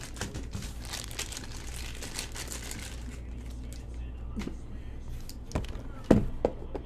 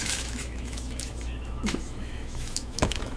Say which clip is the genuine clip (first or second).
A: first